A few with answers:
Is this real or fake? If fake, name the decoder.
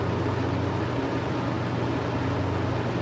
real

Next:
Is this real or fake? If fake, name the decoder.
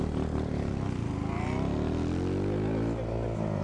real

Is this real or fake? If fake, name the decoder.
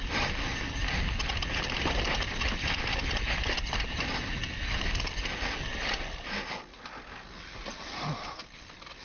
real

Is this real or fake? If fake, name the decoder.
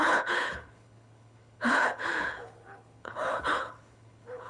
fake, codec, HILCodec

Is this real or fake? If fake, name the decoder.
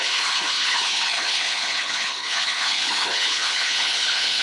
fake, codec, HILCodec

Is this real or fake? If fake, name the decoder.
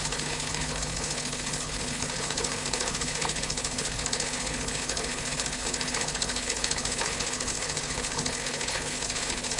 fake, codec, HILCodec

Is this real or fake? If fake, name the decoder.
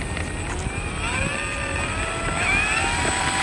real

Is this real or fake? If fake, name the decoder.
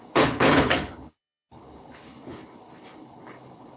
fake, codec, HILCodec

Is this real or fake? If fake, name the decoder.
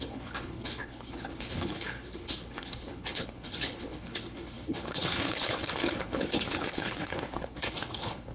fake, codec, HILCodec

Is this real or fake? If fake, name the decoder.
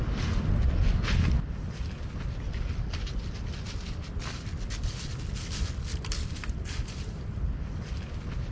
real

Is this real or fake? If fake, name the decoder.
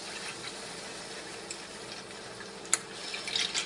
real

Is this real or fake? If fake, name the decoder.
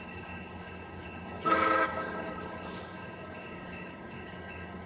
fake, codec, HILCodec